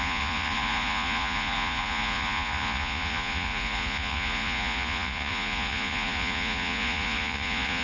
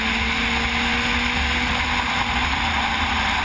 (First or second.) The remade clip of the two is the first